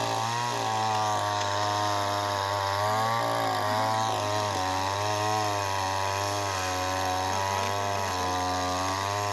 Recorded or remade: recorded